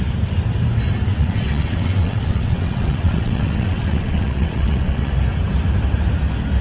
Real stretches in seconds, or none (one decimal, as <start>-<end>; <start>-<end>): 0.0-1.1; 5.1-6.6